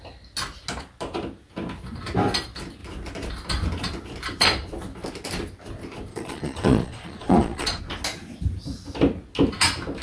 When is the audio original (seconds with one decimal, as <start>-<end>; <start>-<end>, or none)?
0.0-6.1; 7.8-10.0